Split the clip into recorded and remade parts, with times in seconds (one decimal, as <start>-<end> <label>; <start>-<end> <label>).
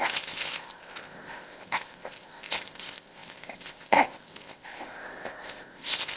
0.0-6.2 remade